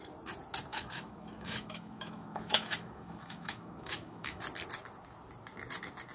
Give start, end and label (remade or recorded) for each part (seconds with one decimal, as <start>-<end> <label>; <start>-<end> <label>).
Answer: 0.0-0.7 recorded; 0.7-4.4 remade; 4.4-6.1 recorded